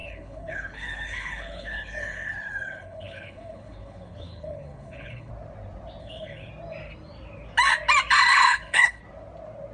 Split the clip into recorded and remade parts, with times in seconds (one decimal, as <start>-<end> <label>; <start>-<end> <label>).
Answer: 0.0-5.3 remade; 5.3-6.0 recorded; 6.0-6.5 remade; 6.5-8.3 recorded; 8.3-9.0 remade; 9.0-9.7 recorded